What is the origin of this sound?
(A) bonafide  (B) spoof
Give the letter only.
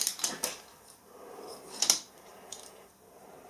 B